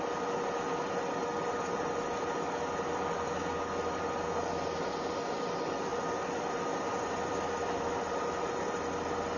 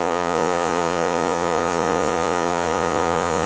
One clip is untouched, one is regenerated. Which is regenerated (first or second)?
second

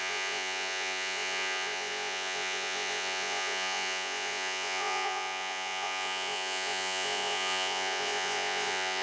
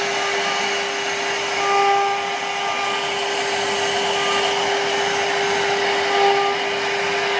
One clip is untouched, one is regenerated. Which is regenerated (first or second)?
first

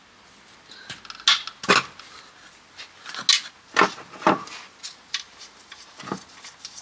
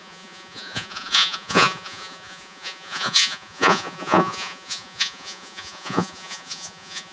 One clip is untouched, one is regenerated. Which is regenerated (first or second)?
second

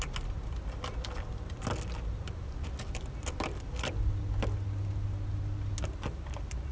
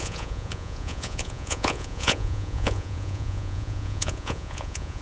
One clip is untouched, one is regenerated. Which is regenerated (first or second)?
second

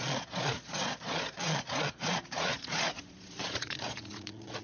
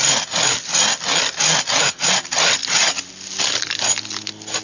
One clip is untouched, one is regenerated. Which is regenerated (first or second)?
first